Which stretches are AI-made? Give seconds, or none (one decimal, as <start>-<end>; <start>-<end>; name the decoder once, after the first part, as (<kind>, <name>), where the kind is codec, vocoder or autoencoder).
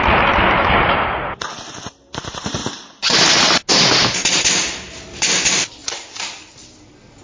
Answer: none